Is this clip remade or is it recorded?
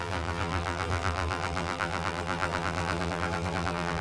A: remade